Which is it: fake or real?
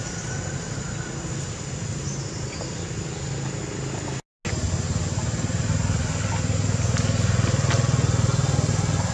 real